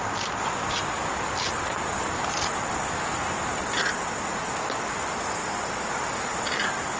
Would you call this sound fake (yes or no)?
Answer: no